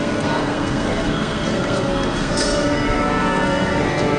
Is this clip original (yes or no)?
no